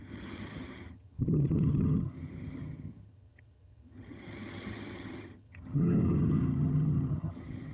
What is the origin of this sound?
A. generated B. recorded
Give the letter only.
A